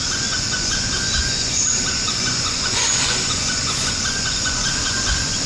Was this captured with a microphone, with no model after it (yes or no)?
no